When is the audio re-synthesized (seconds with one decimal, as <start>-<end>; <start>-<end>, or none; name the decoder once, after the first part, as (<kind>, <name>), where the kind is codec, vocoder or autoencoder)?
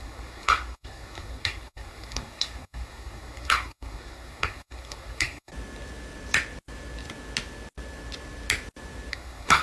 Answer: 0.0-5.5 (codec, SNAC); 9.1-9.6